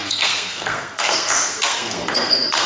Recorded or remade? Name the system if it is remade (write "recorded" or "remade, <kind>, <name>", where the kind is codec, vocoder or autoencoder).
remade, codec, SNAC